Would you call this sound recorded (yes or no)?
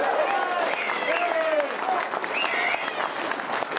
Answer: yes